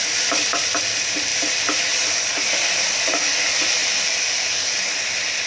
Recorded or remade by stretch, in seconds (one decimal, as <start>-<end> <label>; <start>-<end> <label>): 0.0-5.5 recorded